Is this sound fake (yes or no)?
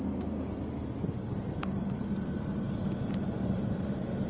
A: no